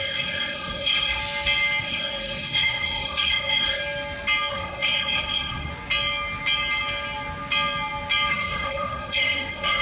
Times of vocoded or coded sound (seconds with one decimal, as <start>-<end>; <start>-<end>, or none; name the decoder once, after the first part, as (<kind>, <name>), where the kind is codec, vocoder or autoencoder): 0.0-1.2 (codec, SNAC); 1.8-3.8; 4.5-5.7; 8.3-9.8